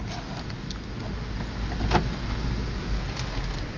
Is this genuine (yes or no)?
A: yes